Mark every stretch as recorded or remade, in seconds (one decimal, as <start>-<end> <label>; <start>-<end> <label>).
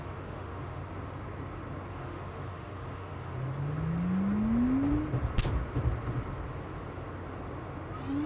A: 0.0-0.8 remade; 0.8-1.9 recorded; 1.9-3.3 remade; 3.3-8.3 recorded